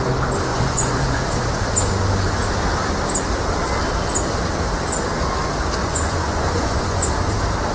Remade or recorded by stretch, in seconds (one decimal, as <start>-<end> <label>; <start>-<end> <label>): 0.0-0.5 recorded; 0.5-1.2 remade; 1.2-5.8 recorded; 5.8-7.1 remade; 7.1-7.7 recorded